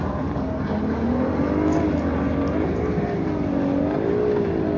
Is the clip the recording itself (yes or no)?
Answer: yes